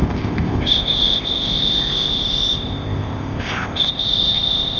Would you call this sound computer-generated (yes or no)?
yes